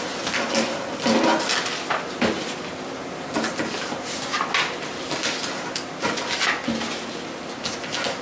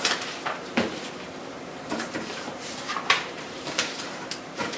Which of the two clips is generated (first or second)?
second